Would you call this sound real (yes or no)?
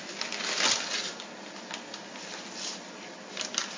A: yes